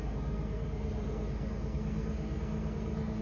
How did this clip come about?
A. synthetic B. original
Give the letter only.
A